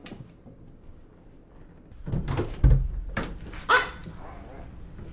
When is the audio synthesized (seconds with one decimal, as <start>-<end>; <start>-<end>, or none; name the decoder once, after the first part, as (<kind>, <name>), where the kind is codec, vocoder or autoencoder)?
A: none